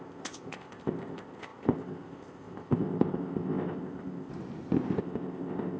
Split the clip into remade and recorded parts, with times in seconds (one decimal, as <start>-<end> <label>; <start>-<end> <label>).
0.0-4.3 remade; 4.3-5.0 recorded; 5.0-5.8 remade